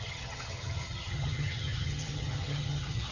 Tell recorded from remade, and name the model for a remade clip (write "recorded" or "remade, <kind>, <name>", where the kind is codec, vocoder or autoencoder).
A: remade, vocoder, HiFi-GAN